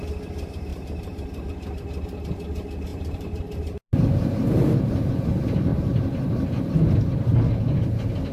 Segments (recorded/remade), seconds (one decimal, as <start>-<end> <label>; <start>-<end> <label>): 0.0-0.7 recorded; 0.7-1.5 remade; 1.5-2.9 recorded; 2.9-5.1 remade; 5.1-5.7 recorded; 5.7-6.6 remade; 6.6-8.3 recorded